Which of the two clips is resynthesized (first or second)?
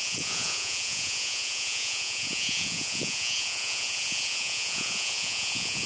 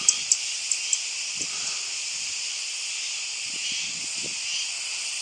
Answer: first